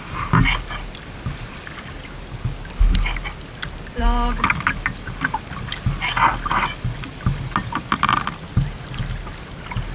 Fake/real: real